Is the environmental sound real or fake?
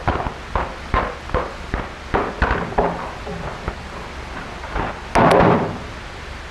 real